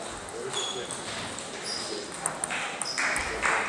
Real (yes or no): yes